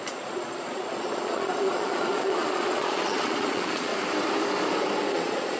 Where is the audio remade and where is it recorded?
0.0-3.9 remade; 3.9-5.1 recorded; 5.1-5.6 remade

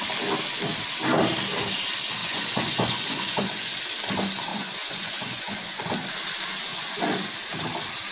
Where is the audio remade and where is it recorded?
0.0-2.2 recorded; 2.2-3.8 remade; 3.8-4.5 recorded; 4.5-5.9 remade; 5.9-6.7 recorded; 6.7-7.3 remade; 7.3-8.1 recorded

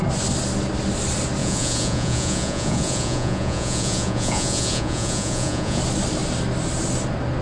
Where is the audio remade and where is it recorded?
0.0-1.4 recorded; 1.4-5.8 remade; 5.8-7.4 recorded

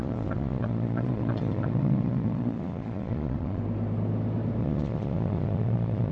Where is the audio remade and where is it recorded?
0.0-3.6 remade; 3.6-4.6 recorded; 4.6-6.1 remade

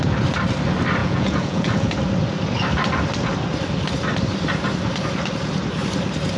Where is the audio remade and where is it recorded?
0.0-1.0 recorded; 1.0-1.9 remade; 1.9-6.4 recorded

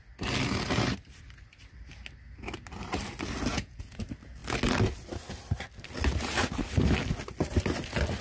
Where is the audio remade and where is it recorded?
0.0-3.5 recorded; 3.5-4.0 remade; 4.0-8.2 recorded

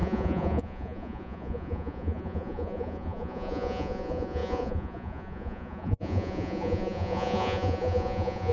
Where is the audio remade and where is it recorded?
0.0-8.5 remade